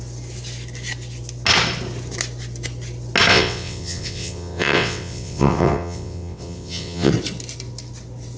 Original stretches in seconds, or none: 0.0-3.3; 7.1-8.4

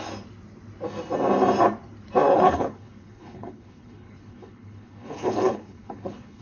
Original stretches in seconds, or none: 0.0-2.3

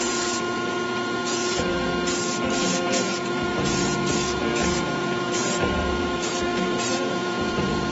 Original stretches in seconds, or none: 1.9-2.9

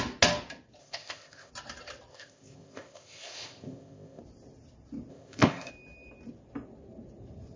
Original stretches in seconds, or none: 0.0-0.8; 1.5-2.1; 4.2-5.1; 5.7-7.6

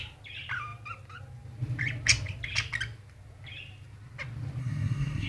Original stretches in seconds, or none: 0.0-4.6

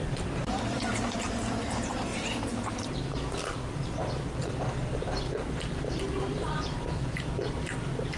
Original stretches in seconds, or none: 2.1-3.6